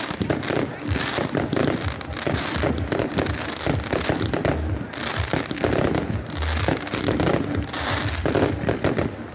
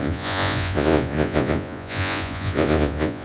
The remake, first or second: second